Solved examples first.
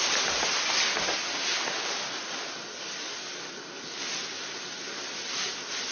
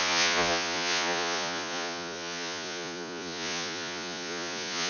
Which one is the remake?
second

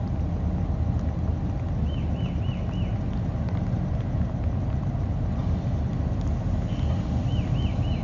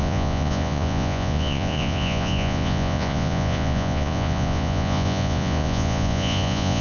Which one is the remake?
second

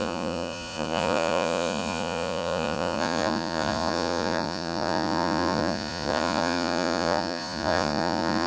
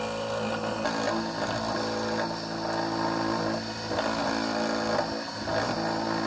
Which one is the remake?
first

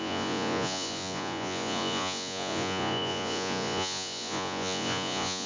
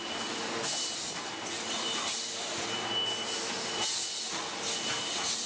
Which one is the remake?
first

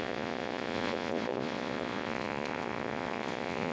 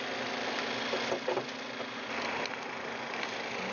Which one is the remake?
first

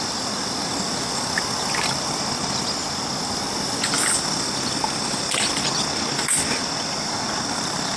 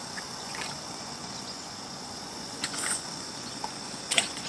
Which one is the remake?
second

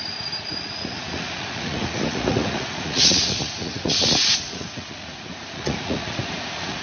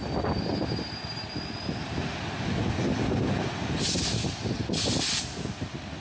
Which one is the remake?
first